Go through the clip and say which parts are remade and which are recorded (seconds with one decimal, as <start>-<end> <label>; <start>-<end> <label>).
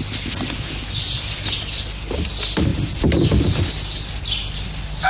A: 0.0-5.1 recorded